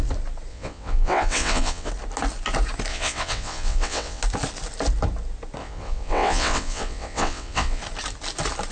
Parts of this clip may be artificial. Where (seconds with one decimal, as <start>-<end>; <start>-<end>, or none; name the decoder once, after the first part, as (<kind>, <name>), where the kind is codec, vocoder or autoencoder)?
0.5-1.9 (vocoder, WaveNeXt); 2.9-4.2; 5.6-7.8